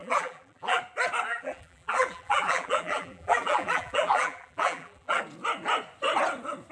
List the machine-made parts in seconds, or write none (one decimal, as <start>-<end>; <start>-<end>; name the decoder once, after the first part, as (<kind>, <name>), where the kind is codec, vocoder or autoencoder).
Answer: 0.0-0.8 (vocoder, BigVGAN v2); 1.3-5.2